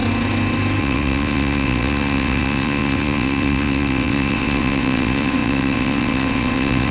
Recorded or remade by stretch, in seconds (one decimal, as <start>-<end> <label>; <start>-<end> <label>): 0.0-0.8 recorded; 0.8-6.9 remade

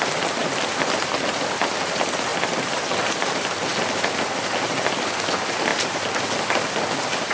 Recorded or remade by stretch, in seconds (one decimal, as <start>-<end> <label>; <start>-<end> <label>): 0.0-7.3 recorded

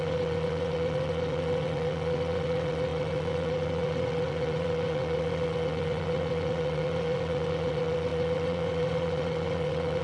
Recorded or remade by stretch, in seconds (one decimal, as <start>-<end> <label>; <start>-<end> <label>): 0.0-10.0 remade

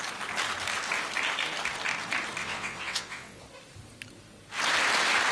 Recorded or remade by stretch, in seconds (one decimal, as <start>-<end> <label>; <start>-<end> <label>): 0.0-2.4 recorded; 2.4-3.4 remade; 3.4-5.3 recorded

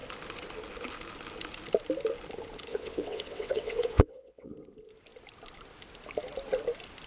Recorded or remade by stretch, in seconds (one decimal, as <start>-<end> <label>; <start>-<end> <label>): 0.0-2.7 recorded; 2.7-4.5 remade; 4.5-7.1 recorded

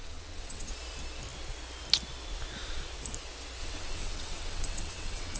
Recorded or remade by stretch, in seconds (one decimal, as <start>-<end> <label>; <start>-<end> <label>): 0.0-0.7 remade; 0.7-3.6 recorded; 3.6-5.4 remade

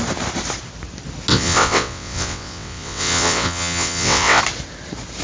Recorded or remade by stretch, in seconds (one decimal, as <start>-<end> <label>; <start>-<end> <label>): 0.0-1.3 recorded; 1.3-4.4 remade; 4.4-5.2 recorded

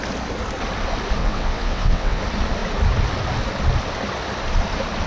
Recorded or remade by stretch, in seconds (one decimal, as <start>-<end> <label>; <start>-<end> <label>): 0.0-1.2 recorded; 1.2-2.2 remade; 2.2-5.1 recorded